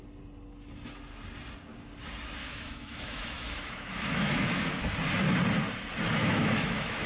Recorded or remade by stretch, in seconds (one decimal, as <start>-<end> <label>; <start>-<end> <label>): 0.0-2.4 recorded; 2.4-4.8 remade; 4.8-6.2 recorded; 6.2-7.1 remade

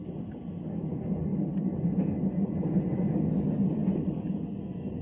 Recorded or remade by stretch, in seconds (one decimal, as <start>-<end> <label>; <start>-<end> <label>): 0.0-5.0 recorded

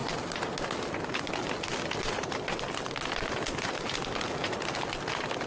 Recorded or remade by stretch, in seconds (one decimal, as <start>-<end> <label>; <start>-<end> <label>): 0.0-5.5 recorded

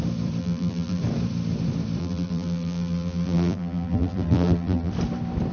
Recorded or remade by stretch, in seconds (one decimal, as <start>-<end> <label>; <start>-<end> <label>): 0.0-0.4 recorded; 0.4-1.0 remade; 1.0-2.0 recorded; 2.0-4.9 remade; 4.9-5.5 recorded

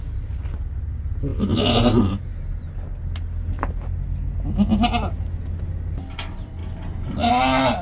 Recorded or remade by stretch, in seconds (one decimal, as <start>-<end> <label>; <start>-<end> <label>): 0.0-7.8 recorded

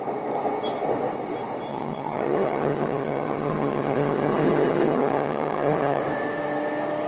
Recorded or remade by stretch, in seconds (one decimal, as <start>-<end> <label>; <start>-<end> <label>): 0.0-1.7 recorded; 1.7-6.0 remade; 6.0-7.1 recorded